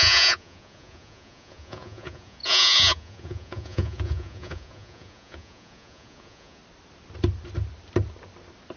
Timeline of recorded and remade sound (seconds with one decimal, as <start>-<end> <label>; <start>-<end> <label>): 0.0-6.6 remade; 6.6-8.8 recorded